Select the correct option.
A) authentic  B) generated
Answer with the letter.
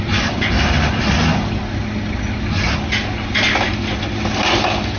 A